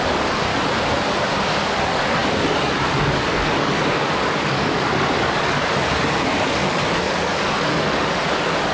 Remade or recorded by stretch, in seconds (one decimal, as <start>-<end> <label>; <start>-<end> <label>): 0.0-0.5 remade; 0.5-1.8 recorded; 1.8-8.7 remade